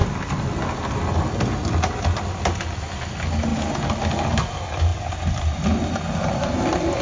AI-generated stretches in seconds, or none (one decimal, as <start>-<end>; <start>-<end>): none